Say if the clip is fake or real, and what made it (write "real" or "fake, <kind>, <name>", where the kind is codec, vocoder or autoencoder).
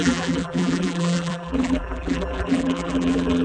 fake, vocoder, BigVGAN v2